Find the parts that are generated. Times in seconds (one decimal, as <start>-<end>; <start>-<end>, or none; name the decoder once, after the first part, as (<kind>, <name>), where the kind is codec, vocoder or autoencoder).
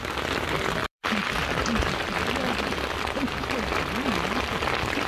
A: 0.8-3.9 (vocoder, BigVGAN v2)